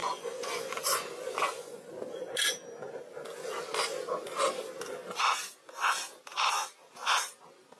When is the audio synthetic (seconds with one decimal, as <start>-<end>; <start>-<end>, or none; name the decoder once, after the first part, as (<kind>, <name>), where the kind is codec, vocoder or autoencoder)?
0.0-1.9 (vocoder, Vocos)